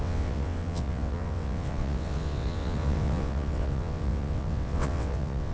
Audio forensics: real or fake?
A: fake